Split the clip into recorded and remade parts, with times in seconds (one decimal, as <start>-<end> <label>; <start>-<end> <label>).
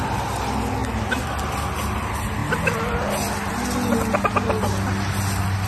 0.0-5.7 recorded